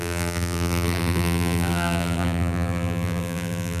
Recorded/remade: remade